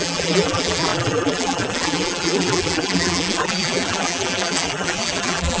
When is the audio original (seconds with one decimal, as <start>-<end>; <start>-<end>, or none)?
none